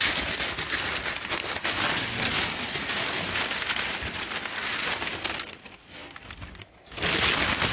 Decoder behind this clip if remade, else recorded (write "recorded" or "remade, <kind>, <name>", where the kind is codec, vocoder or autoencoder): recorded